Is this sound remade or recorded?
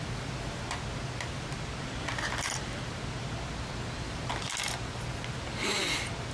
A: recorded